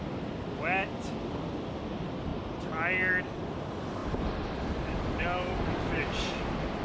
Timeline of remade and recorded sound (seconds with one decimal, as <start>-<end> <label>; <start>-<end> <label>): 0.0-4.0 recorded; 4.0-6.0 remade; 6.0-6.8 recorded

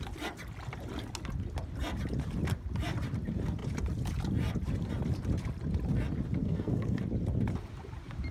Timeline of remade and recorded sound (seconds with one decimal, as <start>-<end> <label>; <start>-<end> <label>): 0.0-6.4 recorded; 6.4-7.0 remade; 7.0-8.3 recorded

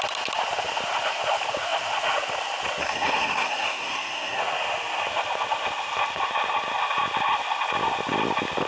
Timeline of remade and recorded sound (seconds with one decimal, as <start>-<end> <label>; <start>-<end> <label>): 0.0-2.8 recorded; 2.8-4.4 remade; 4.4-8.7 recorded

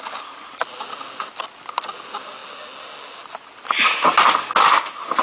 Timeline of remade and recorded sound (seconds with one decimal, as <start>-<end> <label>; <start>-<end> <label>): 0.0-5.2 recorded